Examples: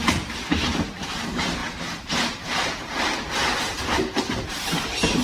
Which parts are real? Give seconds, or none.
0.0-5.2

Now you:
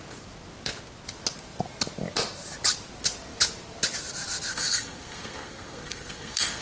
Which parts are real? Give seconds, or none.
0.0-4.5

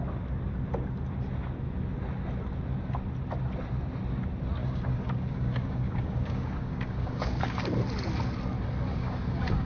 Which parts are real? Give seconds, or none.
0.0-4.6; 7.6-9.0

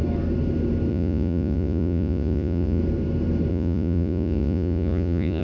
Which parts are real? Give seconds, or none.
0.0-0.9; 2.8-3.5